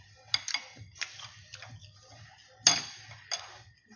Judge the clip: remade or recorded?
recorded